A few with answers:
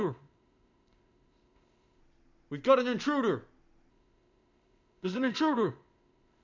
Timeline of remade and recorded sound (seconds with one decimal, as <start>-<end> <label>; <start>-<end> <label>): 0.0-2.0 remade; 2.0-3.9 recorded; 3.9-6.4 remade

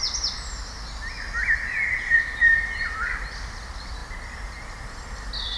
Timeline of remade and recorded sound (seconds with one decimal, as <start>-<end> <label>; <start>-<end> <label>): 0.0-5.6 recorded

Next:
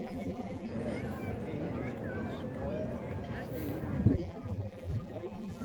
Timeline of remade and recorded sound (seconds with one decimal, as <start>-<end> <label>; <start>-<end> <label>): 0.0-0.7 remade; 0.7-4.1 recorded; 4.1-5.6 remade

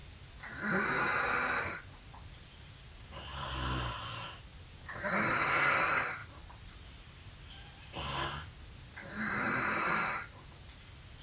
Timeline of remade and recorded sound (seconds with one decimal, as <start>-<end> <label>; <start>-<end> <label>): 0.0-11.2 recorded

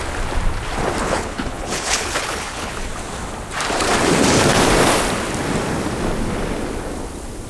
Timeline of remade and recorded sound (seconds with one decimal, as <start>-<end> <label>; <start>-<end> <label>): 0.0-1.0 recorded; 1.0-2.9 remade; 2.9-7.5 recorded

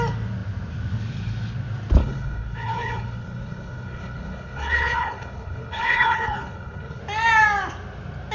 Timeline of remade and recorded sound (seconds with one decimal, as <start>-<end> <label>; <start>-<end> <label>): 0.0-2.0 recorded; 2.0-7.0 remade; 7.0-8.3 recorded